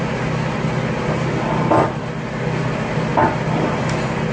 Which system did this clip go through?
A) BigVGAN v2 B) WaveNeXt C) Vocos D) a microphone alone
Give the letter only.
D